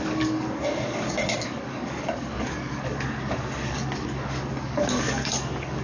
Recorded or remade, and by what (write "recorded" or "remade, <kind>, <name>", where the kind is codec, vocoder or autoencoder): remade, codec, DAC